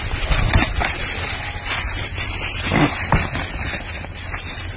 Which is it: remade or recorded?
recorded